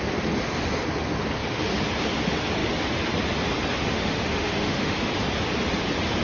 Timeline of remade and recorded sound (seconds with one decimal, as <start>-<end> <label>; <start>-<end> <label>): 0.0-3.9 recorded; 3.9-5.1 remade; 5.1-6.2 recorded